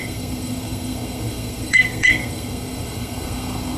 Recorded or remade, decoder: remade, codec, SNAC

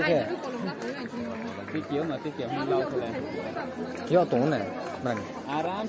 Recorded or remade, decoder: recorded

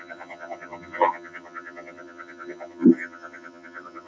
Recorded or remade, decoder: remade, vocoder, HiFi-GAN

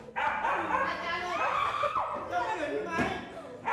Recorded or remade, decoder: recorded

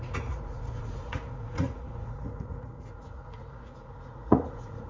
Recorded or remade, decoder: remade, vocoder, Vocos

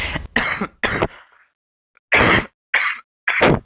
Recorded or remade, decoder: recorded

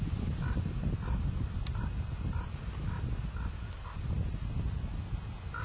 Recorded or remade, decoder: recorded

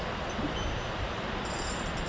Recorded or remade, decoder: recorded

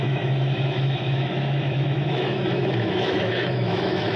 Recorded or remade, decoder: remade, autoencoder, DAC-VAE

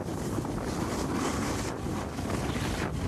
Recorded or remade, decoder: recorded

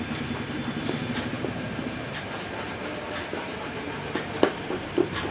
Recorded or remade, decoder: remade, vocoder, BigVGAN v2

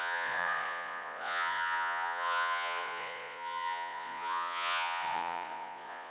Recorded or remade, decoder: remade, vocoder, Vocos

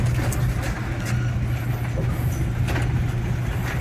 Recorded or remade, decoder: recorded